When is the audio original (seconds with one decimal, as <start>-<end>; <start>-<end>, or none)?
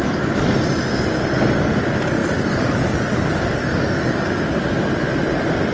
0.0-2.2; 3.7-5.7